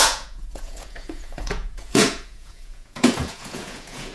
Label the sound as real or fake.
fake